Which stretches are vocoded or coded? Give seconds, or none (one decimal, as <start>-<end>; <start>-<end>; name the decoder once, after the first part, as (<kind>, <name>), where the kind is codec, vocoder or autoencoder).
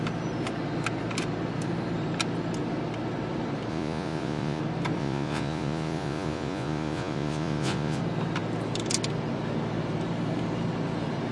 3.7-4.6 (vocoder, Vocos); 5.0-8.0